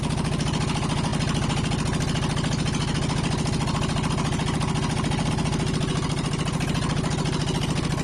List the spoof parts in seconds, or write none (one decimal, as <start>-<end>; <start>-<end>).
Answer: none